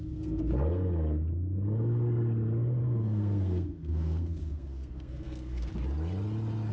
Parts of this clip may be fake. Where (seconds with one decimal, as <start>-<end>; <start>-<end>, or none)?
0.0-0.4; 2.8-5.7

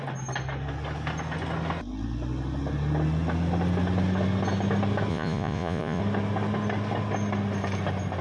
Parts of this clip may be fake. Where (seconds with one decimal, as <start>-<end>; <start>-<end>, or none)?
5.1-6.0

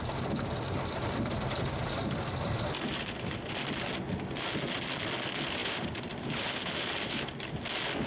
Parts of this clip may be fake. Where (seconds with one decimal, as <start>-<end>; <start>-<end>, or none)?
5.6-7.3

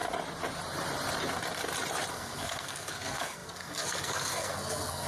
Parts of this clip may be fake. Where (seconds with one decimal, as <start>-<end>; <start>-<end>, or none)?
2.1-5.1